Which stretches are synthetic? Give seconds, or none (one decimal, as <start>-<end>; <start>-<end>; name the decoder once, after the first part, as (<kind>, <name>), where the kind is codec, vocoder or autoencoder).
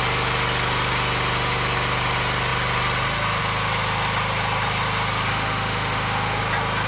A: 5.3-6.4 (autoencoder, DAC-VAE)